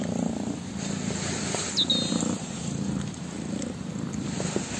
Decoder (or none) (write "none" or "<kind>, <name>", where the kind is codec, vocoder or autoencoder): none